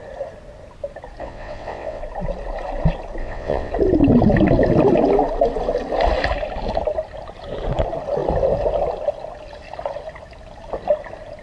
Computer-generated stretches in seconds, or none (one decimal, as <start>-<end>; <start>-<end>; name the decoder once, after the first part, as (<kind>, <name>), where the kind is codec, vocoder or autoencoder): 1.2-2.0 (vocoder, WaveNeXt); 3.2-3.7